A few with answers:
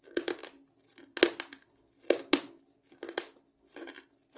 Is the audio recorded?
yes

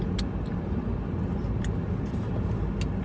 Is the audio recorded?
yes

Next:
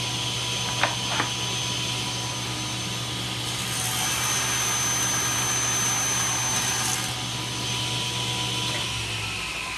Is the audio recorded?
yes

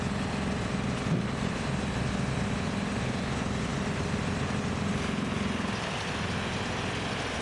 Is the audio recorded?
yes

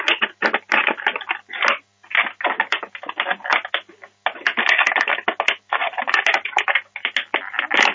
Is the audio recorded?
yes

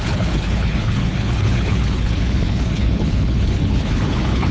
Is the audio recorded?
no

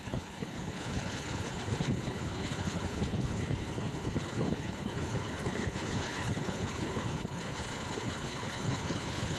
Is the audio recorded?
no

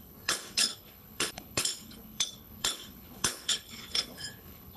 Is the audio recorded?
no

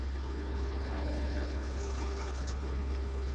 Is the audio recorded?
no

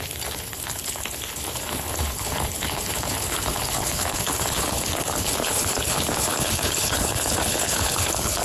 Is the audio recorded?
no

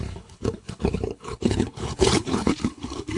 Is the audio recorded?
no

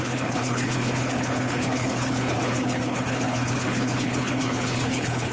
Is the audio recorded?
no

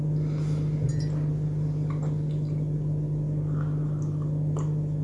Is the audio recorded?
yes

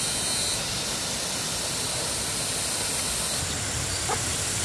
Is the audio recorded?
yes